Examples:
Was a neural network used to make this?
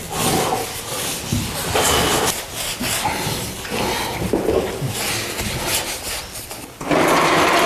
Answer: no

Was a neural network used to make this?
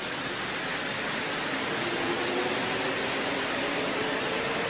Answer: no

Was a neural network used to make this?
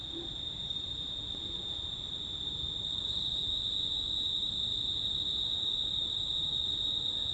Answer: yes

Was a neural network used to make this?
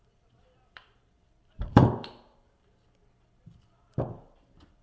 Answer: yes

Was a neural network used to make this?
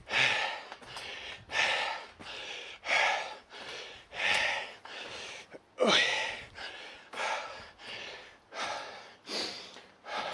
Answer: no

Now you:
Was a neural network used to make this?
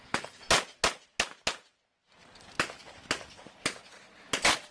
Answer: no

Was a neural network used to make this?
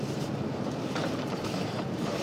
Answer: yes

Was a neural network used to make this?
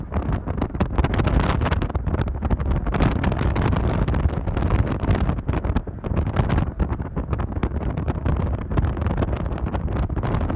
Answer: yes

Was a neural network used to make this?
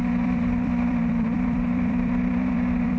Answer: yes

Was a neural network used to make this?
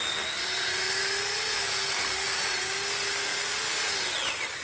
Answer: no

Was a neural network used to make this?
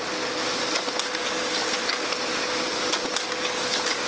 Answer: no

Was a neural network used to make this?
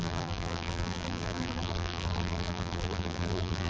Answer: yes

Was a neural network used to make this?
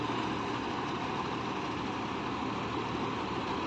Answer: no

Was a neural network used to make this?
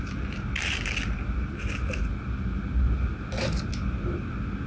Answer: no